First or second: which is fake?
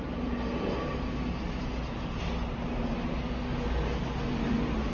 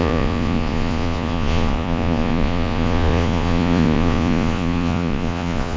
second